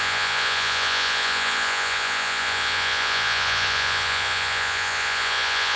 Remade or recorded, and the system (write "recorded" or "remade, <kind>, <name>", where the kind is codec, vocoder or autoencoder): remade, vocoder, Vocos